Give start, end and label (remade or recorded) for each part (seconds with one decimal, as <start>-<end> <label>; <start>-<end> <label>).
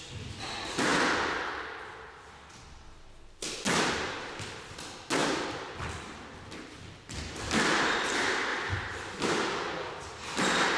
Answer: 0.0-5.2 recorded; 5.2-7.4 remade; 7.4-8.5 recorded; 8.5-9.9 remade; 9.9-10.8 recorded